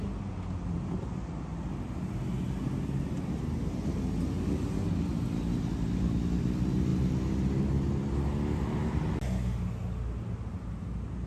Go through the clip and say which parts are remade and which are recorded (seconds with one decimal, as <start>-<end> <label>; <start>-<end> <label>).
0.0-11.3 recorded